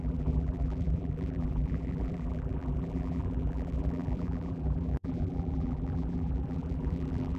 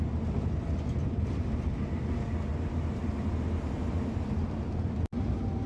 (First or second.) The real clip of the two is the second